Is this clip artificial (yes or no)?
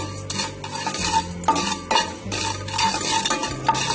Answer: no